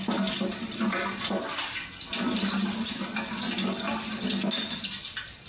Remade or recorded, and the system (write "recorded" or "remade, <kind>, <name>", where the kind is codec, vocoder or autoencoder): recorded